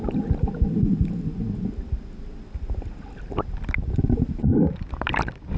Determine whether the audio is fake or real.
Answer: real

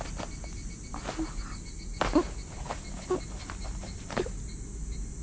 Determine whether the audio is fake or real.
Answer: real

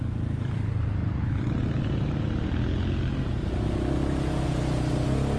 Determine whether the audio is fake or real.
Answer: real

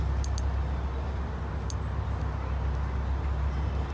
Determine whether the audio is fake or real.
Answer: real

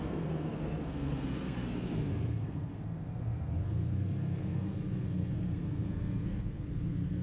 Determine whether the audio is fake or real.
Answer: fake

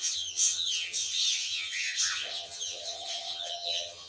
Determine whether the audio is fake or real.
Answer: fake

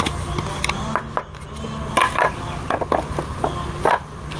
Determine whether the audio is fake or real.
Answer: real